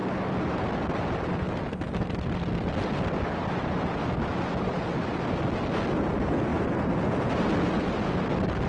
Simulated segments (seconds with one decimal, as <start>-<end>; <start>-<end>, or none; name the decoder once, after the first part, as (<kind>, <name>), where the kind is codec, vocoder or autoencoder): none